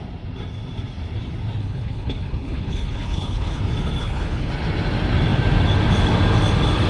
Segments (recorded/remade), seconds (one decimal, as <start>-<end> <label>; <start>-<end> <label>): 0.0-1.6 recorded; 1.6-3.6 remade; 3.6-4.0 recorded; 4.0-4.5 remade; 4.5-6.9 recorded